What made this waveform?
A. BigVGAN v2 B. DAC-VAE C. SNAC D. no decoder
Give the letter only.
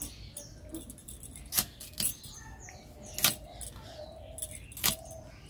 D